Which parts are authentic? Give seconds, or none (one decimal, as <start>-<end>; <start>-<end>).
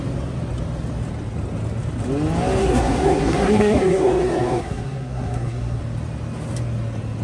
0.0-2.6; 5.8-7.2